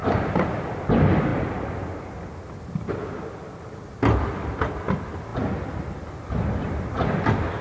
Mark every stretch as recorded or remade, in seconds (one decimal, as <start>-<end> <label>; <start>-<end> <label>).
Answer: 0.0-7.6 recorded